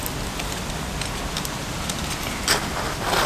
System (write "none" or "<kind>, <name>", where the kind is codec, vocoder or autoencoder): none